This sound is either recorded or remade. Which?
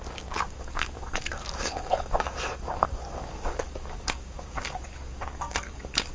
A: remade